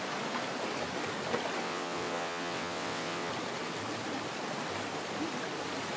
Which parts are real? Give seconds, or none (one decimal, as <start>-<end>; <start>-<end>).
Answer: 0.0-1.6; 3.3-6.0